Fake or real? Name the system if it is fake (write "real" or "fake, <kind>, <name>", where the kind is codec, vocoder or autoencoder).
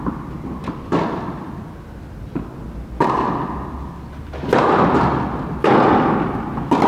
real